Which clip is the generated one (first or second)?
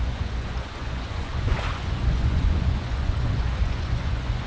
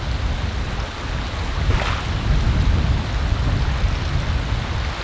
first